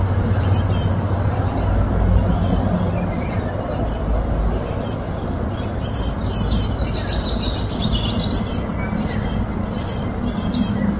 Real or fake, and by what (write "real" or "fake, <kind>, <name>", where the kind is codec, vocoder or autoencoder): real